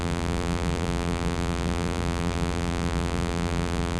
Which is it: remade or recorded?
remade